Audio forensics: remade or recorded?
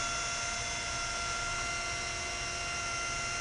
recorded